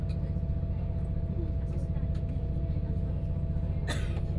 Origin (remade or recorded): recorded